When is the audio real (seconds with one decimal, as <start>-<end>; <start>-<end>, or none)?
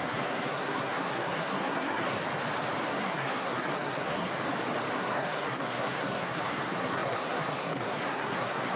2.2-2.9; 4.3-4.9